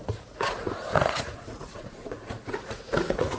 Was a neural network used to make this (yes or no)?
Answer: yes